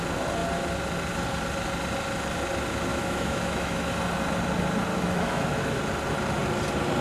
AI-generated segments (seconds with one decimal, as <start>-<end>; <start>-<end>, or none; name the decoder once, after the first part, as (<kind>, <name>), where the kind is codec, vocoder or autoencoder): 2.9-3.9 (autoencoder, DAC-VAE); 4.9-5.8